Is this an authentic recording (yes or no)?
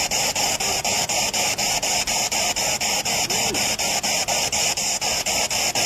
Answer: yes